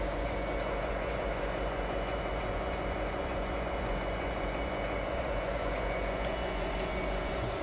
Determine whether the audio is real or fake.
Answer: fake